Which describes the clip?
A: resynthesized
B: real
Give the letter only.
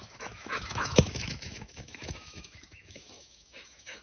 A